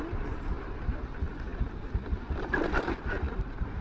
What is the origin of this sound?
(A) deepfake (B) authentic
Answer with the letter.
B